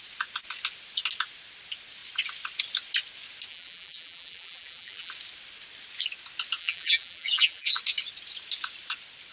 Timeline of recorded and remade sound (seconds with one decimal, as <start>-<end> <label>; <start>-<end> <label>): 0.0-3.5 recorded; 3.5-5.1 remade; 5.1-6.6 recorded; 6.6-7.8 remade; 7.8-9.3 recorded